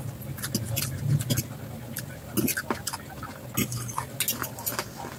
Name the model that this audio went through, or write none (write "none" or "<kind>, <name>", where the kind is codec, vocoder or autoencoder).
none